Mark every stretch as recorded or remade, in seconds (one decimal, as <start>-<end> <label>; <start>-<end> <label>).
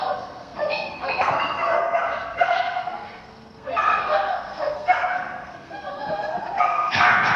0.0-7.4 remade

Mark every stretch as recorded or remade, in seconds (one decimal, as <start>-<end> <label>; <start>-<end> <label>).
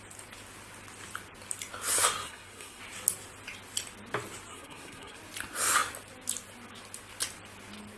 0.0-2.2 recorded; 2.2-2.8 remade; 2.8-4.5 recorded; 4.5-5.2 remade; 5.2-8.0 recorded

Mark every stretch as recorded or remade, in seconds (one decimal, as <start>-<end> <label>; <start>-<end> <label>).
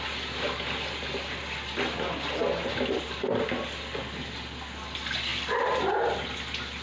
0.0-6.8 recorded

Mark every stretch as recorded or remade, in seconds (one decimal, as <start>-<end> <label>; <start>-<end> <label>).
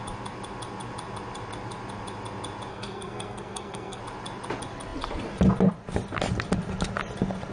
0.0-2.7 recorded; 2.7-4.0 remade; 4.0-7.5 recorded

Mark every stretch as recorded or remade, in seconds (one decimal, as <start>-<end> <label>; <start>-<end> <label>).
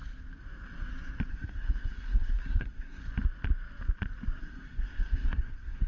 0.0-1.3 recorded; 1.3-3.0 remade; 3.0-4.4 recorded; 4.4-5.9 remade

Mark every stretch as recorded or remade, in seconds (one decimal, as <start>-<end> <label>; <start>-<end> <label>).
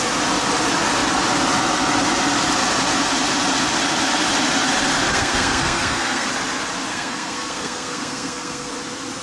0.0-5.1 recorded; 5.1-6.3 remade; 6.3-6.9 recorded; 6.9-8.7 remade; 8.7-9.2 recorded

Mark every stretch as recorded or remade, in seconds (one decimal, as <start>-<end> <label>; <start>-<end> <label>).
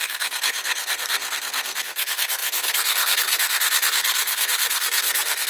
0.0-5.5 remade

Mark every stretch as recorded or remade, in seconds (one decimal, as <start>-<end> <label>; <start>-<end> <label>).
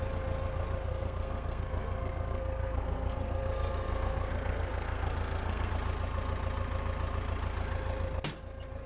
0.0-0.9 recorded; 0.9-5.7 remade; 5.7-8.9 recorded